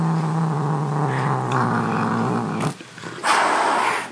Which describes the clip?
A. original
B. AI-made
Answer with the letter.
A